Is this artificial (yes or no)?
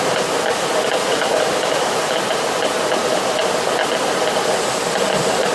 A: no